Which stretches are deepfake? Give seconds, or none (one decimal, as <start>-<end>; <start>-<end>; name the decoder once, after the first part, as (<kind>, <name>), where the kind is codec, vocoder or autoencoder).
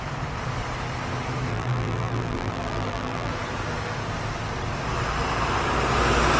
1.5-3.3 (vocoder, BigVGAN v2)